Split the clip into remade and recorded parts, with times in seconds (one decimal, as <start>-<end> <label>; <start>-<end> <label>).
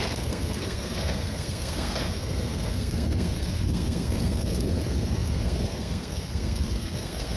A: 0.0-7.4 remade